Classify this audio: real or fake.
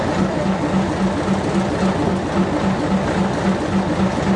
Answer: real